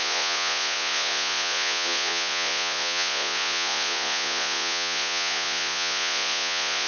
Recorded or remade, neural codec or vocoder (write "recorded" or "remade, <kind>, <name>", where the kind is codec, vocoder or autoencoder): remade, vocoder, Vocos